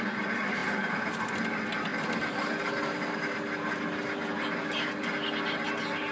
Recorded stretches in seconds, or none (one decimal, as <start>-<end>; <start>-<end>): 0.0-0.6; 1.2-1.9; 2.5-6.1